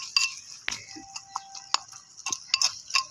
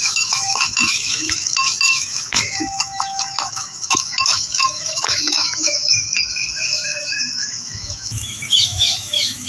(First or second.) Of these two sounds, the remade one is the second